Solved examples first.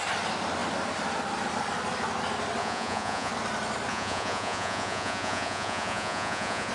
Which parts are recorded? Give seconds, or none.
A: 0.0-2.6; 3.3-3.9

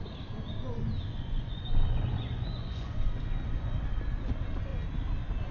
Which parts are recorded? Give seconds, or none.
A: 0.0-1.1; 3.8-5.5